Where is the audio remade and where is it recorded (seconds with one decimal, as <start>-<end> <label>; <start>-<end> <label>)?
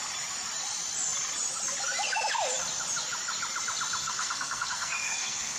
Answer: 0.0-4.0 recorded; 4.0-5.6 remade